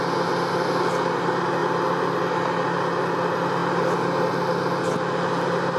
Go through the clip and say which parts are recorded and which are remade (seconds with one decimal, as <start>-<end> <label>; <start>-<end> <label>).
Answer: 0.0-5.8 recorded